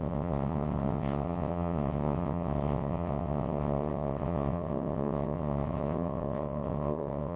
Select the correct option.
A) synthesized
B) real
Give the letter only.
A